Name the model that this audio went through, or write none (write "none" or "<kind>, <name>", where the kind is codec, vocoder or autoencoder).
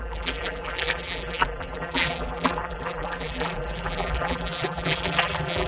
vocoder, BigVGAN v2